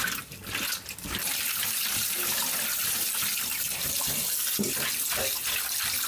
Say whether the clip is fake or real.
real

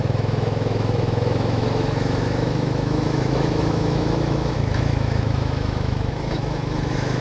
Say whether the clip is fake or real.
fake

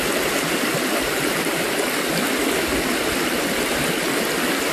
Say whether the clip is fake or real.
real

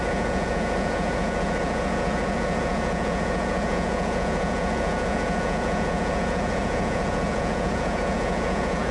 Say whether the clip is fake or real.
fake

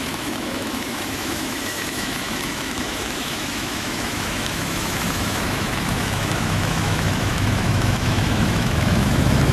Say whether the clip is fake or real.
fake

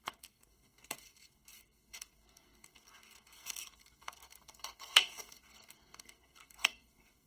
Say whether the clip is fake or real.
fake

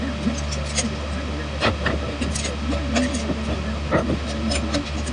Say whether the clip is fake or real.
real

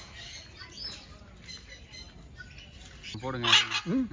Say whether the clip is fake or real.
real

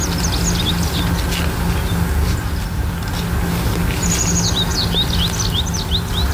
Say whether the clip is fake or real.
real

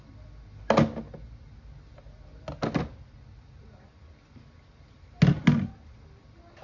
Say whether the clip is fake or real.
real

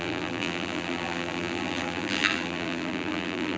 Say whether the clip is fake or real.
fake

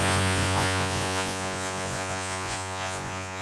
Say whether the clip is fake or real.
fake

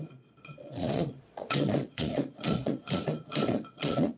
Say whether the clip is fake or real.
fake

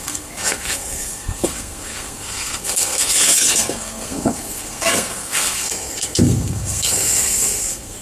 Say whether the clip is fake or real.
fake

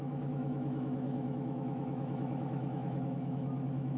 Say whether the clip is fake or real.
fake